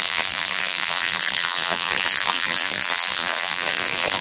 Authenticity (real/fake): fake